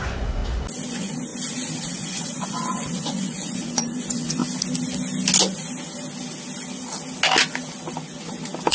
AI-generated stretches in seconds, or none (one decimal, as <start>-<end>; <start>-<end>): 0.0-0.4; 0.9-1.3; 1.9-4.4